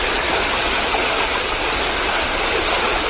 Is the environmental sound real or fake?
real